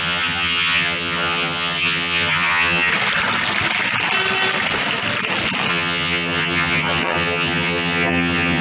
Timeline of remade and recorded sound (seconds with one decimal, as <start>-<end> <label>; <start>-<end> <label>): 0.0-2.9 remade; 2.9-5.7 recorded; 5.7-8.6 remade